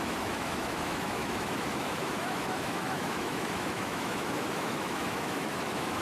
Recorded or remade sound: remade